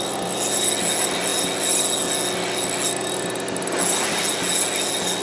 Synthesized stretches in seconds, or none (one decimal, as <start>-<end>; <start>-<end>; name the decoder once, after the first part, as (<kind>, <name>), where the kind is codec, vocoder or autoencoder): none